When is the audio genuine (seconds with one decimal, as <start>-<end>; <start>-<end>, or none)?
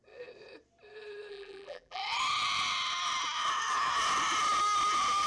0.0-1.3; 2.0-5.3